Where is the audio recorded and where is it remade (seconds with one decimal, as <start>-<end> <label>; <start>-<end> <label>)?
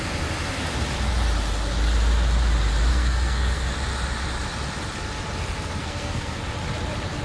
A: 0.0-2.9 recorded; 2.9-3.7 remade; 3.7-5.8 recorded; 5.8-6.4 remade; 6.4-7.2 recorded